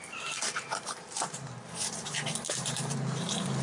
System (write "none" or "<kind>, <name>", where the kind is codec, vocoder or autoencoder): vocoder, BigVGAN v2